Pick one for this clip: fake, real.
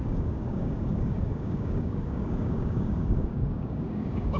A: fake